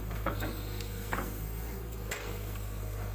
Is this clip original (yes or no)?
no